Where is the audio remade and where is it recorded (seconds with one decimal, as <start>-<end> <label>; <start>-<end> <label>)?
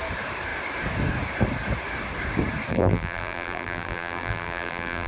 0.0-2.7 recorded; 2.7-5.1 remade